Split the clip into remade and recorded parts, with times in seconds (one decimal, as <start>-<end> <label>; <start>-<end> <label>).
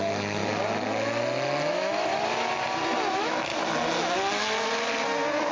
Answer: 0.0-0.4 remade; 0.4-1.7 recorded; 1.7-2.1 remade; 2.1-3.1 recorded; 3.1-3.5 remade; 3.5-5.5 recorded